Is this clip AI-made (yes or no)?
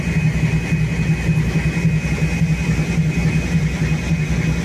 no